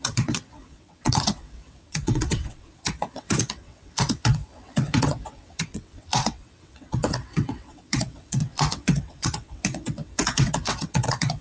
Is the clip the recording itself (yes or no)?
no